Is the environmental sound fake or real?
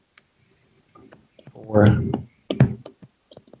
real